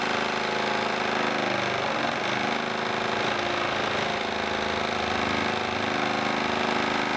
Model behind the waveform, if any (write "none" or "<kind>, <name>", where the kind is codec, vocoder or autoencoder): none